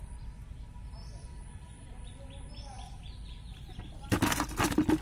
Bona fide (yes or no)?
yes